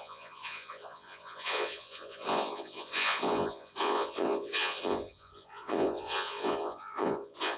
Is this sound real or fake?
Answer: fake